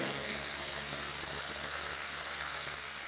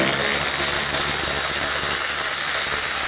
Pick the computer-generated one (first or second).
first